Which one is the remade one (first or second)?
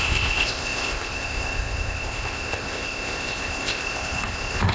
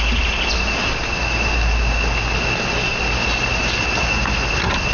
first